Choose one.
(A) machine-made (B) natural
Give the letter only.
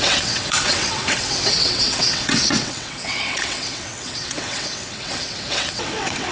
A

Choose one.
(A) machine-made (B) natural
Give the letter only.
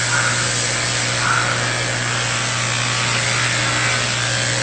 B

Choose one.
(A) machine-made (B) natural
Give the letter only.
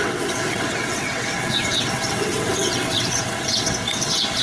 A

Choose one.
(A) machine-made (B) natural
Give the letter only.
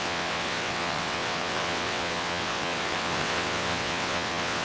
A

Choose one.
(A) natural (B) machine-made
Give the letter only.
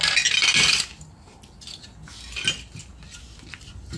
A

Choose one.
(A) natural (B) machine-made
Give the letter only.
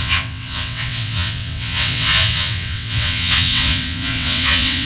B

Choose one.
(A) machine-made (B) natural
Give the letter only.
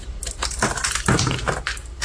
B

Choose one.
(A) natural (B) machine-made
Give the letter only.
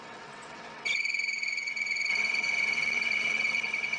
B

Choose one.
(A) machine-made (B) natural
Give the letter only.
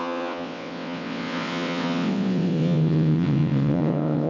A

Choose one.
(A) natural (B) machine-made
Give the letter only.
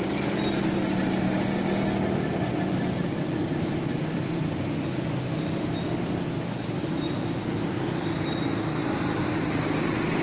A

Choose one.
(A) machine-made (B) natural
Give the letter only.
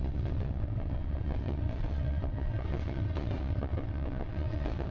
A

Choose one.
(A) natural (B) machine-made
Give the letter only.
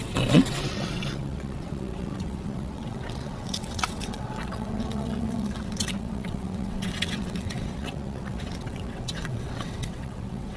B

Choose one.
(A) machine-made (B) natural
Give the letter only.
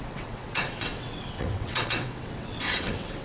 A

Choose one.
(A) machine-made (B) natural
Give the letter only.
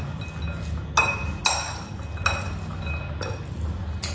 B